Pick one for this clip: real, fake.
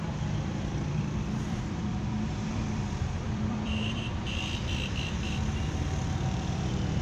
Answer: fake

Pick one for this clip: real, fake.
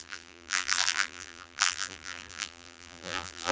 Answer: fake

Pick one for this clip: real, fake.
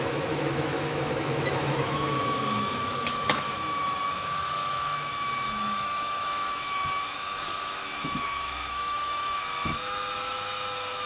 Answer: fake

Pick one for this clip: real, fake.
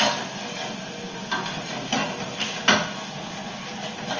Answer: real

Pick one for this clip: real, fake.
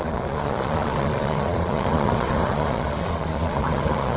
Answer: fake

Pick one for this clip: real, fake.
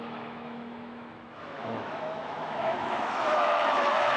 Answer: fake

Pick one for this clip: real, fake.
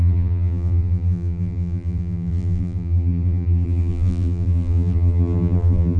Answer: fake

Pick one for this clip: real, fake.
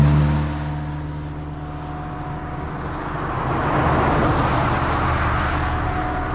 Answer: real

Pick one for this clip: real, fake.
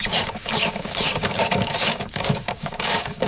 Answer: fake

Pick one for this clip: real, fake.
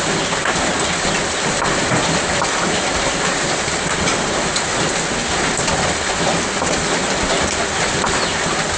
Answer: real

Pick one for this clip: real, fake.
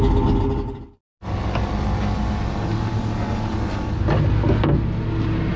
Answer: real